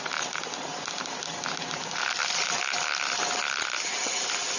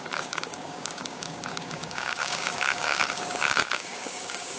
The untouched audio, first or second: first